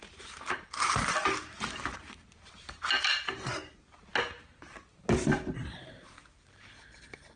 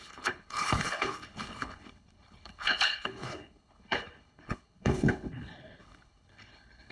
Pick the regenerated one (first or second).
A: second